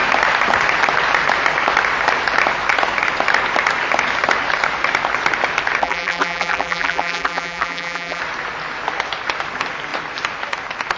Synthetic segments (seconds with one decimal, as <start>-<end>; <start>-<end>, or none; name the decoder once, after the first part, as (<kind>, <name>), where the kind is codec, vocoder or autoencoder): 5.8-8.2 (vocoder, BigVGAN v2)